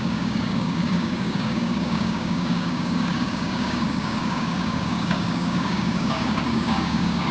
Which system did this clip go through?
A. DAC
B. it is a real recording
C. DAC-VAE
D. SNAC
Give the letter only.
A